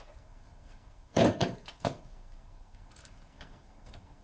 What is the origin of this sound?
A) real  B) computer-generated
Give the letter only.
B